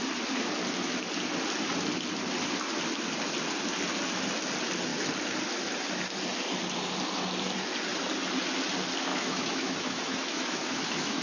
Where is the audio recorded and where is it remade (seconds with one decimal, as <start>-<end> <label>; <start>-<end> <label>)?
0.0-9.1 recorded; 9.1-11.2 remade